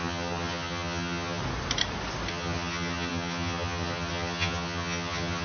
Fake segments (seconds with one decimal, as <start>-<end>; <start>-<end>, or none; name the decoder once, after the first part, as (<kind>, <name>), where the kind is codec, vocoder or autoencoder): 0.0-1.4 (vocoder, HiFi-GAN); 2.3-5.4